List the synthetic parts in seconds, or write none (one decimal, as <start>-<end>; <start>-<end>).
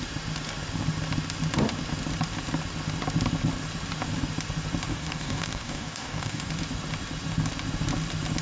4.9-6.5